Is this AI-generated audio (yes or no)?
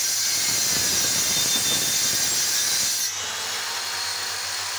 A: no